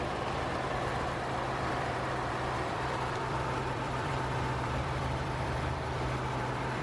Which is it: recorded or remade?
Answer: remade